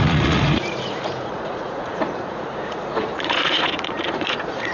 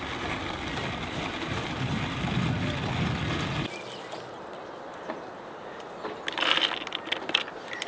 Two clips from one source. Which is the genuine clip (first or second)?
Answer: second